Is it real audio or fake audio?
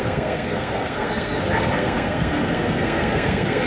fake